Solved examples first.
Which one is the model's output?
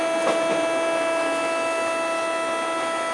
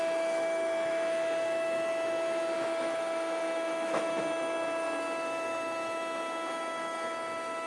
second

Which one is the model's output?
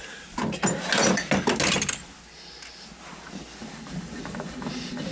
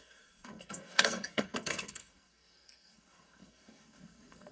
second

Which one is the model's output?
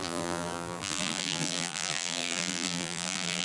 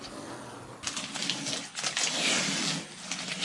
first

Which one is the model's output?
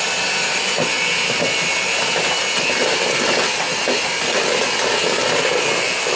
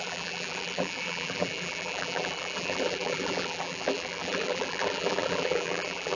second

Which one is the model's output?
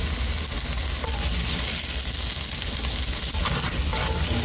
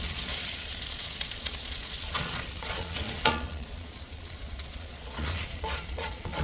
second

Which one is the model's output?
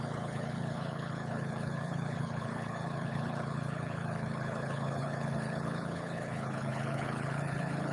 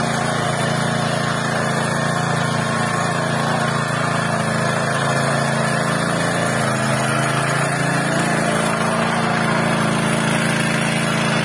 first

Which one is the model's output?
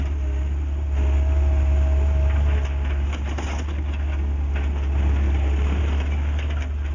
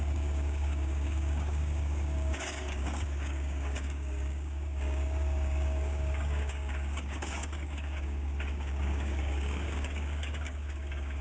second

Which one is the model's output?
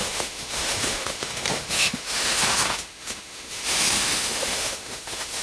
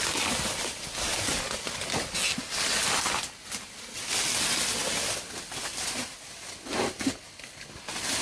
first